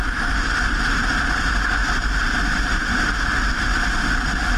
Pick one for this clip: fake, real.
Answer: real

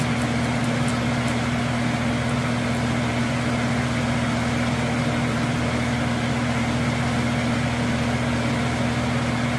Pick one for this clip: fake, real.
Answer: real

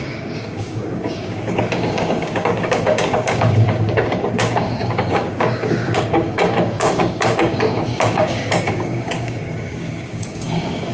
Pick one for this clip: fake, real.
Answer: fake